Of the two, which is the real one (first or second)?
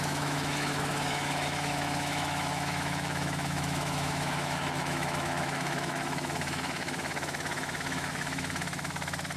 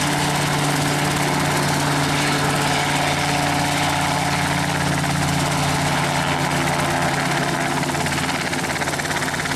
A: second